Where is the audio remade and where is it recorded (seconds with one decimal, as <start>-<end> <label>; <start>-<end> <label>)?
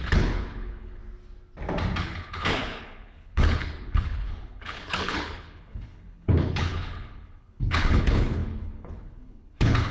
0.0-1.0 remade; 1.0-2.0 recorded; 2.0-9.9 remade